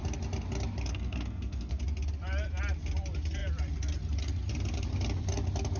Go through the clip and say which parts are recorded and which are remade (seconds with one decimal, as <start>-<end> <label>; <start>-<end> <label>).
0.0-0.9 recorded; 0.9-1.8 remade; 1.8-5.8 recorded